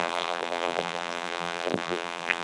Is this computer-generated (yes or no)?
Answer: yes